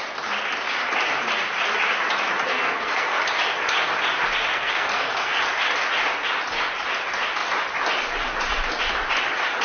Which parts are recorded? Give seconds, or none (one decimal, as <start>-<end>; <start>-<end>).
0.0-2.5; 3.2-4.5; 5.4-9.6